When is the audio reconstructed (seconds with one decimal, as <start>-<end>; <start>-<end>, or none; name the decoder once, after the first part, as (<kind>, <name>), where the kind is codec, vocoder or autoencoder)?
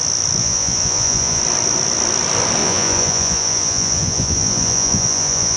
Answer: 0.4-1.4 (vocoder, Vocos); 2.6-5.6